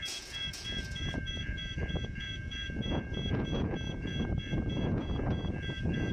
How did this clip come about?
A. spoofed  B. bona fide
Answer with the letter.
A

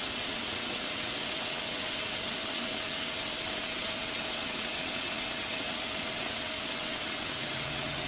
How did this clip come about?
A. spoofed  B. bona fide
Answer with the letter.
A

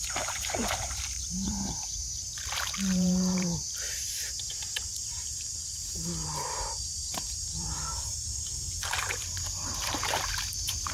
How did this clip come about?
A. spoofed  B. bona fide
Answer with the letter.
A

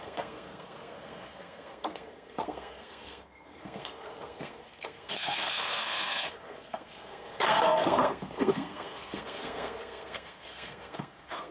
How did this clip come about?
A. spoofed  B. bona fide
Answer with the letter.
A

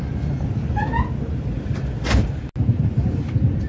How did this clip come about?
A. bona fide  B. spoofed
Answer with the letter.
A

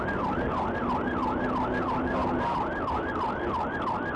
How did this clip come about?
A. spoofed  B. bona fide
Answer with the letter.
B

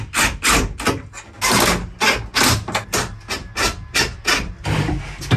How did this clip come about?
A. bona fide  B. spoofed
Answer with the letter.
A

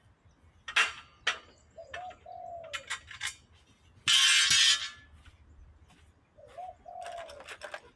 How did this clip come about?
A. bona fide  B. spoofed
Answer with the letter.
A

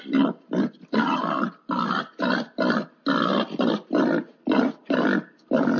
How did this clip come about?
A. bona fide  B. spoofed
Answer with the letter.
A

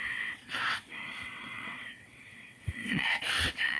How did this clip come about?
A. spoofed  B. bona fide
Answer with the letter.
A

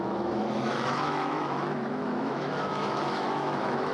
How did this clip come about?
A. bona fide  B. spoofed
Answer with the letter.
B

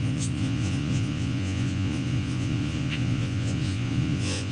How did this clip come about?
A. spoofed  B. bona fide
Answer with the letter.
A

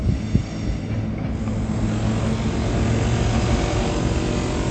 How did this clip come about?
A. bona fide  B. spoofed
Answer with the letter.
A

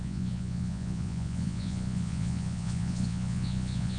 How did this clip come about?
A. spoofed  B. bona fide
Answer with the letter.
A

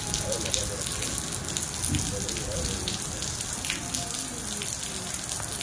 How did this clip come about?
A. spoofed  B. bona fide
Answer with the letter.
B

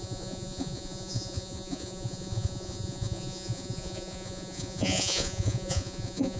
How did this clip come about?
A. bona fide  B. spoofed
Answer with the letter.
B